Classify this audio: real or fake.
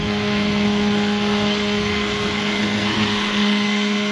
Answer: fake